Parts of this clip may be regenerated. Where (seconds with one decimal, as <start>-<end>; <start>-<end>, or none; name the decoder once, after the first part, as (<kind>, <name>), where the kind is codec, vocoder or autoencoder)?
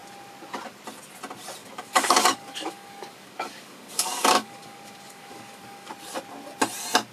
1.6-5.9 (codec, DAC)